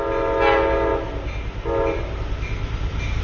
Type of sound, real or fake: real